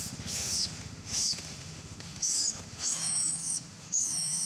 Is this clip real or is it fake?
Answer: fake